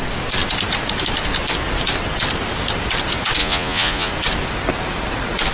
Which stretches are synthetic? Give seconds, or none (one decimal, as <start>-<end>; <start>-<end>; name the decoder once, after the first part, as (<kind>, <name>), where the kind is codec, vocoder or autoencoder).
3.4-4.1 (vocoder, Vocos)